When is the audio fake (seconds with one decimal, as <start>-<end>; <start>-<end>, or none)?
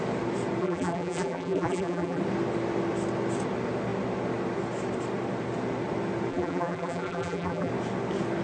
0.6-2.2; 6.3-7.7